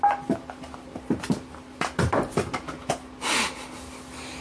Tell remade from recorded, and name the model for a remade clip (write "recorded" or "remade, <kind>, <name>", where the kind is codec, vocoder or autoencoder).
recorded